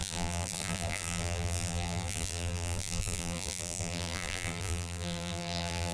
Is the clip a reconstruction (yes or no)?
yes